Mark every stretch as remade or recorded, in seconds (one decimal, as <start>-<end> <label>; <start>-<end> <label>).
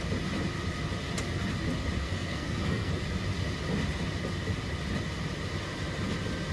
0.0-2.0 recorded; 2.0-2.9 remade; 2.9-6.5 recorded